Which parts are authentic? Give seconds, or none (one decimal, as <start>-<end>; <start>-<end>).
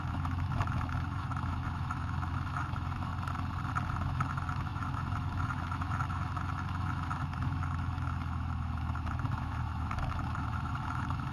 3.1-3.9